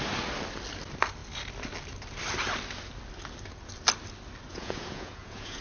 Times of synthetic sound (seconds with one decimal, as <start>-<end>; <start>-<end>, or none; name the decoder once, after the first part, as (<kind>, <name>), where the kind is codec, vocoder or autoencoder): 4.5-5.6 (vocoder, Vocos)